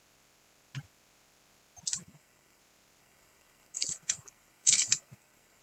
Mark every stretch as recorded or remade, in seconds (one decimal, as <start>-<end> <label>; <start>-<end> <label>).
0.0-2.0 recorded; 2.0-2.6 remade; 2.6-3.0 recorded; 3.0-5.6 remade